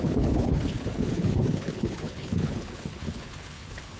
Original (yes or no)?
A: no